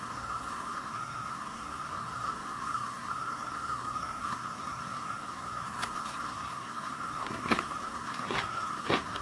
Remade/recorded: remade